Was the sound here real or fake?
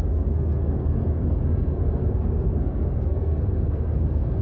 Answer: fake